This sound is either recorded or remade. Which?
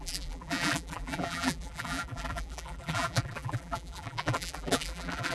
remade